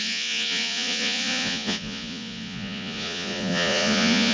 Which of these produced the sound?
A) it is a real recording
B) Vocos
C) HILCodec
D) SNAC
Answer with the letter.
B